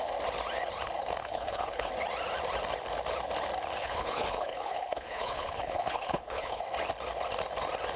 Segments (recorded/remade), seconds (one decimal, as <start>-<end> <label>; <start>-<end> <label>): 0.0-1.2 recorded; 1.2-1.9 remade; 1.9-3.8 recorded; 3.8-6.6 remade; 6.6-8.0 recorded